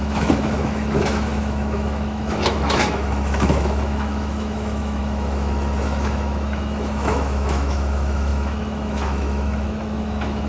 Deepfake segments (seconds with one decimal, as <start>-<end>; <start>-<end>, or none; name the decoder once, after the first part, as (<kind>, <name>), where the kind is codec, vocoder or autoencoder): 0.0-10.5 (autoencoder, DAC-VAE)